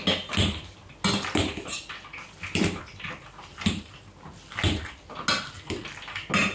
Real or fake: real